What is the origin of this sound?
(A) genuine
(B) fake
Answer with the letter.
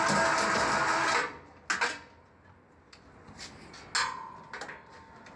A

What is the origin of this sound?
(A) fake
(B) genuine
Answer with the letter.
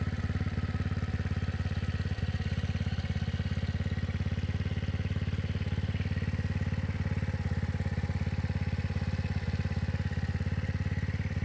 B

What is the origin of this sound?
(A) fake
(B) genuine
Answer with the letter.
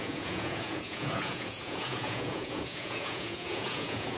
A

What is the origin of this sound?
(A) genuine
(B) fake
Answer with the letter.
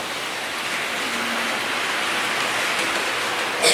A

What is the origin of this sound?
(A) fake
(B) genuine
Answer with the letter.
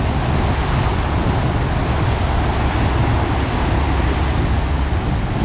B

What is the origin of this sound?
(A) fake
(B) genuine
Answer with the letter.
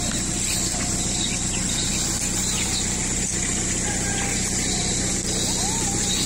B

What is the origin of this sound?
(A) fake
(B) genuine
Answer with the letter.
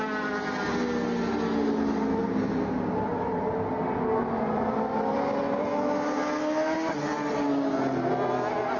B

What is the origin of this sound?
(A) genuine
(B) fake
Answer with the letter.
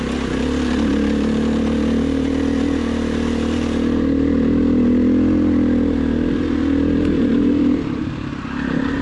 A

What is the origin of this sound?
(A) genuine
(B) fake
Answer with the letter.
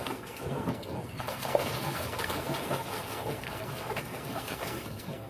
B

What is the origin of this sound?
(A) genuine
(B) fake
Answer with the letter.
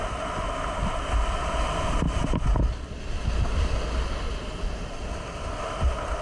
A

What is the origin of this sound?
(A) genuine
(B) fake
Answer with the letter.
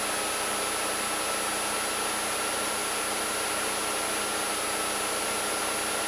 A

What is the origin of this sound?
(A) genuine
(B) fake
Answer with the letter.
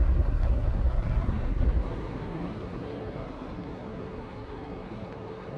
B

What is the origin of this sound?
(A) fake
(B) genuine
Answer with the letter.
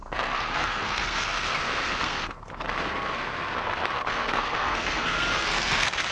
A